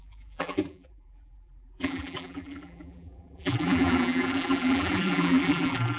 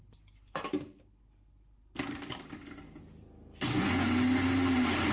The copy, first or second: first